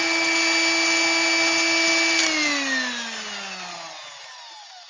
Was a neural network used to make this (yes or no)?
no